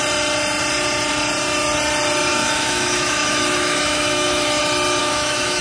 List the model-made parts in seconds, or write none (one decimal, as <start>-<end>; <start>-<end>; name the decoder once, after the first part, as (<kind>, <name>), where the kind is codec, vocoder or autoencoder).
2.3-4.6 (autoencoder, DAC-VAE); 5.0-5.6

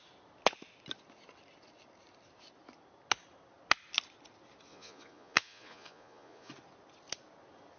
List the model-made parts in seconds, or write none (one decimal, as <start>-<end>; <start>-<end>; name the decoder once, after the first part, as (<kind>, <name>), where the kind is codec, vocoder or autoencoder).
4.7-6.5 (vocoder, Vocos)